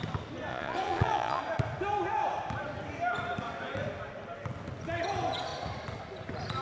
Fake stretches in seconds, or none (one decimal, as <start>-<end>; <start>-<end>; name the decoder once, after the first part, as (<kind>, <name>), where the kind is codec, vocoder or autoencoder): 0.5-1.4 (vocoder, Vocos)